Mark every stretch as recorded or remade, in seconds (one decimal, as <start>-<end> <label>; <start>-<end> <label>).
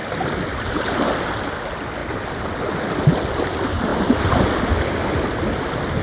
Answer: 0.0-6.0 recorded